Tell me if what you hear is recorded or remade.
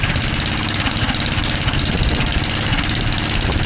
recorded